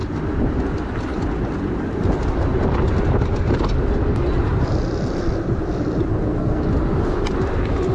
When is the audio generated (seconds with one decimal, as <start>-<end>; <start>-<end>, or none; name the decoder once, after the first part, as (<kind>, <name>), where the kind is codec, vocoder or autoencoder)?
6.1-6.6 (codec, SNAC)

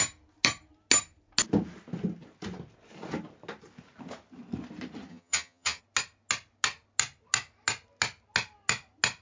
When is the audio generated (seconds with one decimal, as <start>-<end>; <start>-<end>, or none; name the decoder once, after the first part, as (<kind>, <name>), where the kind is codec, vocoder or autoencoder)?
5.1-5.8 (vocoder, HiFi-GAN)

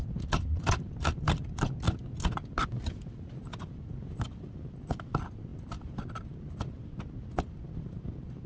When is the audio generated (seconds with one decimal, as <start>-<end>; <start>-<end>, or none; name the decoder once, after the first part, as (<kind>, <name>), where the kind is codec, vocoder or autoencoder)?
none

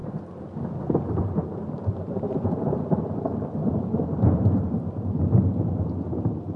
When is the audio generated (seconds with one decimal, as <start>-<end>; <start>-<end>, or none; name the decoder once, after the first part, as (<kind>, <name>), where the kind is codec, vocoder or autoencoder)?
0.0-0.5 (vocoder, BigVGAN v2); 1.2-5.2

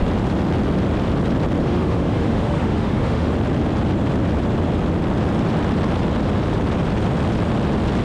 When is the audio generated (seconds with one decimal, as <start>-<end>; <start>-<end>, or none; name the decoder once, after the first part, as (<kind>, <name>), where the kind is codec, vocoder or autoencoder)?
1.6-3.3 (autoencoder, DAC-VAE)

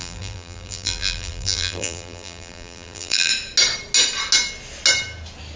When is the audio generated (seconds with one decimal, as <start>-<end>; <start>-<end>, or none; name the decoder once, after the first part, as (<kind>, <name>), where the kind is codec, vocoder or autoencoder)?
0.0-3.3 (vocoder, BigVGAN v2)

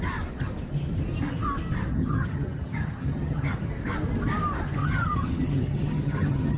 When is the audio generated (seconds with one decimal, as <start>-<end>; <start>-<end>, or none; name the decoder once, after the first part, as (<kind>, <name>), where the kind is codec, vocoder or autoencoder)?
1.9-3.7 (vocoder, HiFi-GAN); 4.8-6.6